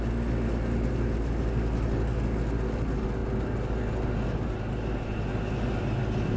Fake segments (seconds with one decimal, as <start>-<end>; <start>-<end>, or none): none